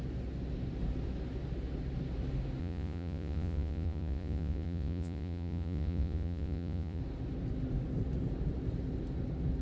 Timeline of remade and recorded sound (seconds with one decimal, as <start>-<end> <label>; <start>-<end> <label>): 0.0-2.6 recorded; 2.6-7.0 remade; 7.0-9.6 recorded